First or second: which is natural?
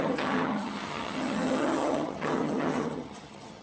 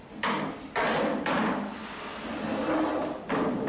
second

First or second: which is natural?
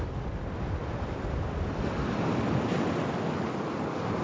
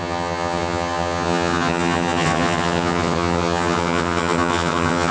first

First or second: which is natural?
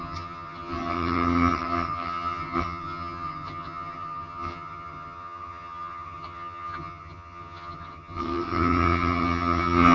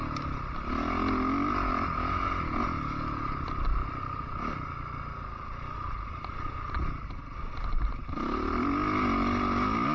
second